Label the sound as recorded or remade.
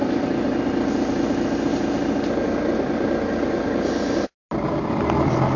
recorded